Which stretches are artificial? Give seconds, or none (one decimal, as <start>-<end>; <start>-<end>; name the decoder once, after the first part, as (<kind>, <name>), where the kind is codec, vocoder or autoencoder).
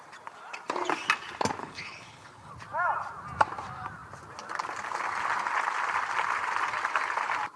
1.6-2.5 (codec, HILCodec)